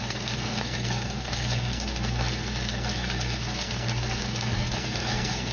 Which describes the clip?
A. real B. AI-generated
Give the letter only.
B